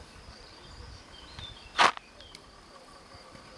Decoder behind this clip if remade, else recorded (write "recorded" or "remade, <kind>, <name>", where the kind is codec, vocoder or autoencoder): recorded